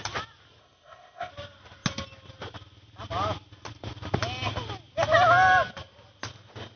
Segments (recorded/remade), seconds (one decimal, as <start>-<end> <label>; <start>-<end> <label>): 0.0-0.6 recorded; 0.6-1.3 remade; 1.3-6.8 recorded